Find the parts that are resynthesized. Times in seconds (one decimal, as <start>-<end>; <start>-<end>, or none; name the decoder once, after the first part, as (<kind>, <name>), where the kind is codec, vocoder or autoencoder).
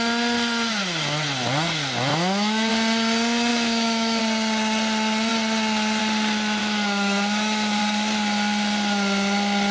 2.1-2.7 (autoencoder, DAC-VAE); 3.5-4.2; 6.6-7.8